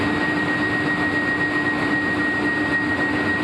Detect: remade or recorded recorded